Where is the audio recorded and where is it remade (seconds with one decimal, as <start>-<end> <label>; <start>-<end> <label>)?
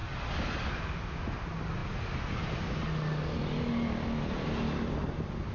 0.0-5.5 recorded